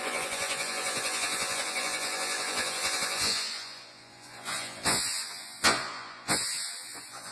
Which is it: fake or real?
fake